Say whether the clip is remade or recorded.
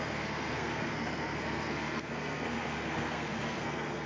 remade